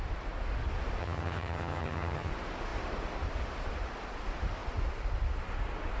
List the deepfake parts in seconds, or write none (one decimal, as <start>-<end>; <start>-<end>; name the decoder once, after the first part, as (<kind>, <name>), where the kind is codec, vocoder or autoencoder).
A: 1.0-2.3 (vocoder, HiFi-GAN)